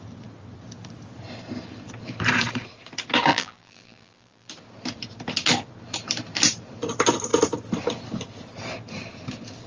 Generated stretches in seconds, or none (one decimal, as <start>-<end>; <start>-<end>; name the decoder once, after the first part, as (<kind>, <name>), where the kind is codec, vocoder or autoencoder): 3.3-4.5 (vocoder, BigVGAN v2)

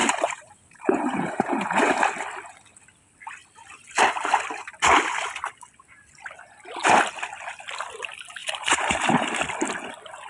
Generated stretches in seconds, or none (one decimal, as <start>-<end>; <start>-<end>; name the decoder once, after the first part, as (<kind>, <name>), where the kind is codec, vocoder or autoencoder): 0.0-2.0 (vocoder, BigVGAN v2); 8.4-9.4

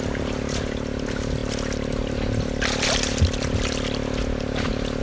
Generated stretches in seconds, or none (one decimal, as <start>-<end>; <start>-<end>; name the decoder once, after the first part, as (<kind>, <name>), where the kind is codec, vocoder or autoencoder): none

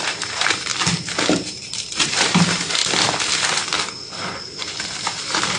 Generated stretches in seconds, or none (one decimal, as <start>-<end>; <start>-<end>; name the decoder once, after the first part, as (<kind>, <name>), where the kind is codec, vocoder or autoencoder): 0.0-0.7 (vocoder, BigVGAN v2); 1.5-2.8; 4.4-5.6

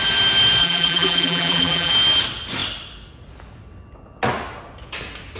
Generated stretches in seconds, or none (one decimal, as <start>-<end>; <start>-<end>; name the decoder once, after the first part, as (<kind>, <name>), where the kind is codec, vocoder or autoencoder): 0.6-1.9 (vocoder, BigVGAN v2)

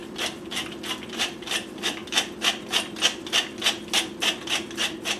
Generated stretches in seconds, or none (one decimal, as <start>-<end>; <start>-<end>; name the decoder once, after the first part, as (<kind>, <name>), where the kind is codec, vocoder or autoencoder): 1.1-2.0 (vocoder, BigVGAN v2)